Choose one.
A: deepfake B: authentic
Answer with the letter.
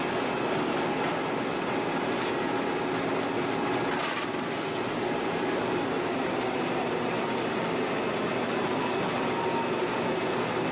B